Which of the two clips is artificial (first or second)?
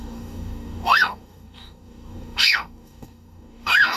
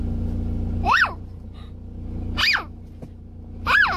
first